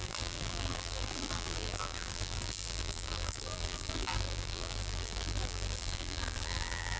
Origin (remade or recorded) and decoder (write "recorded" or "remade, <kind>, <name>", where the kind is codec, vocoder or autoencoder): remade, vocoder, BigVGAN v2